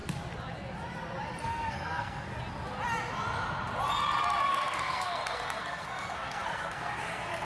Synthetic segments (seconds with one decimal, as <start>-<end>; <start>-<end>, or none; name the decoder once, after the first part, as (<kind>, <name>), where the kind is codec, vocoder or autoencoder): 1.4-2.3 (codec, SNAC); 4.4-7.4